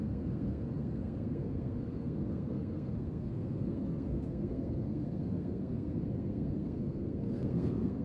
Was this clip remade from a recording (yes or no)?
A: yes